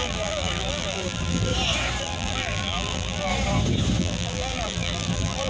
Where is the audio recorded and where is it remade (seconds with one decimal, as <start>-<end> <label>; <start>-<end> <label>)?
0.0-1.5 remade; 1.5-2.0 recorded; 2.0-3.3 remade; 3.3-4.0 recorded; 4.0-5.5 remade